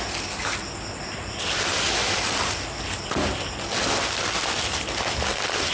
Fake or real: real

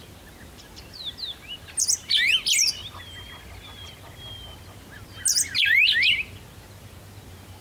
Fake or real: real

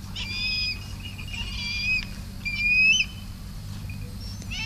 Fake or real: real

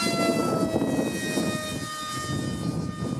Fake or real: real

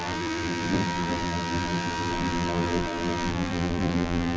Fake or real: fake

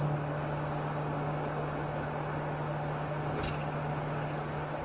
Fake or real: real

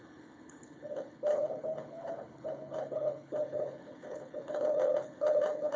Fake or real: fake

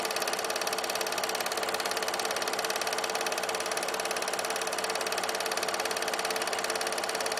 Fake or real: real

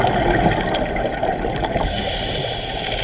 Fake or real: real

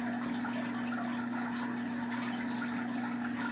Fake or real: real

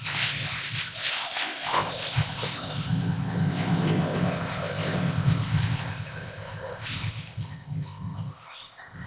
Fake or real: fake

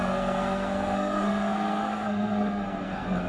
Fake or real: fake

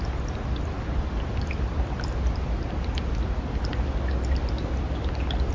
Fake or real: real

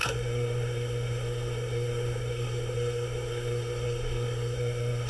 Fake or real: fake